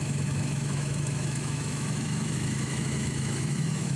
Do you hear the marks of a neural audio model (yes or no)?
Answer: yes